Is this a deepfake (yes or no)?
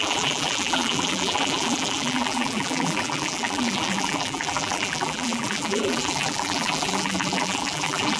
yes